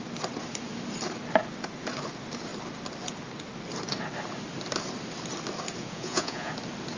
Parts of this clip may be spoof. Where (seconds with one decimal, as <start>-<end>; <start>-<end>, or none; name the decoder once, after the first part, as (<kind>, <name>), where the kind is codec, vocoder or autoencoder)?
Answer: 5.8-6.5 (vocoder, Vocos)